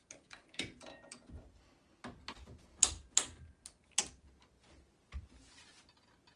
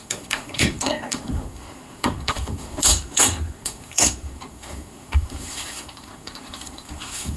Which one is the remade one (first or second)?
second